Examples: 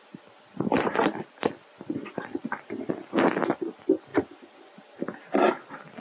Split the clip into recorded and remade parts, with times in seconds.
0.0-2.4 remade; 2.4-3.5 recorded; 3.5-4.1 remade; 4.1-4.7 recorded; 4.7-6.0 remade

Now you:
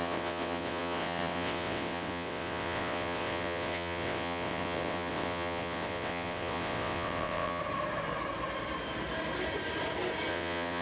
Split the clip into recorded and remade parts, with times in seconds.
0.0-7.6 remade; 7.6-10.3 recorded; 10.3-10.8 remade